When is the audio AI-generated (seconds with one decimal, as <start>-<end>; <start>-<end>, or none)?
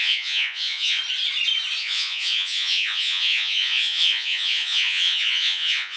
0.0-1.0; 1.8-6.0